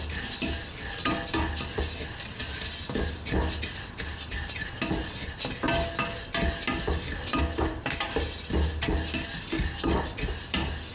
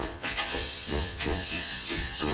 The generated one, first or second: second